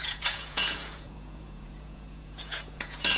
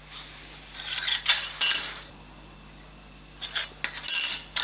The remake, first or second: first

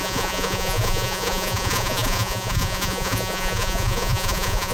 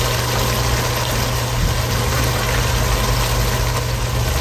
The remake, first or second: first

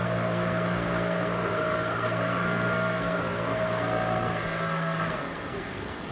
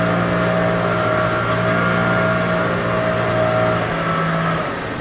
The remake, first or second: first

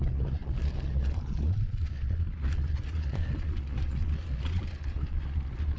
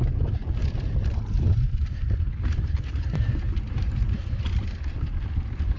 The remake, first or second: first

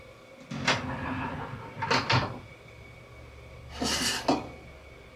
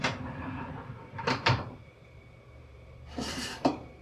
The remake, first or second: second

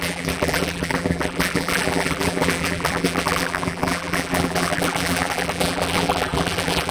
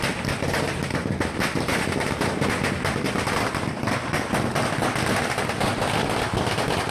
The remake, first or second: first